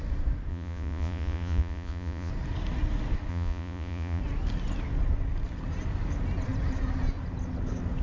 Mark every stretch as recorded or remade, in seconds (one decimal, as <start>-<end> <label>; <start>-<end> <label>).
0.0-0.5 recorded; 0.5-2.3 remade; 2.3-3.3 recorded; 3.3-4.2 remade; 4.2-8.0 recorded